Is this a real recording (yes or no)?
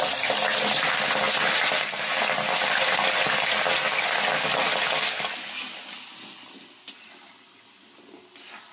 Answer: yes